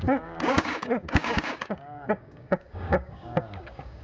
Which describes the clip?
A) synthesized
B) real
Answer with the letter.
A